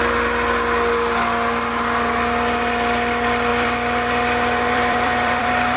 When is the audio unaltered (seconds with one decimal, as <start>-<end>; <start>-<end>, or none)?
0.0-3.5